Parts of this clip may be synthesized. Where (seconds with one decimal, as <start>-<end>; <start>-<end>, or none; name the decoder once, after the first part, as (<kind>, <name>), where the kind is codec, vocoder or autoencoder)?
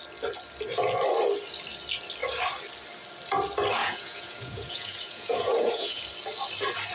3.8-6.0 (vocoder, Vocos)